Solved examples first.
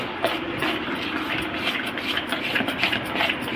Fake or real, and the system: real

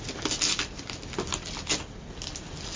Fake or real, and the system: real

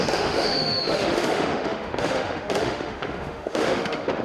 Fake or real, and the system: fake, autoencoder, DAC-VAE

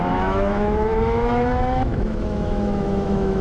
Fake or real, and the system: fake, autoencoder, DAC-VAE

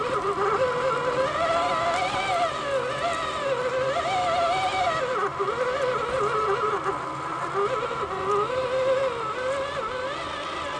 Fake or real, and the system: real